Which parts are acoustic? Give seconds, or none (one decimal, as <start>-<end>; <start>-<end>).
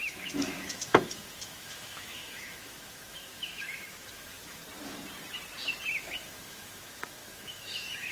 4.6-6.0